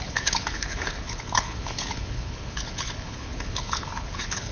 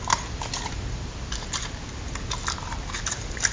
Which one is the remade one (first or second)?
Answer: first